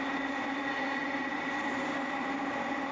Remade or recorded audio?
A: recorded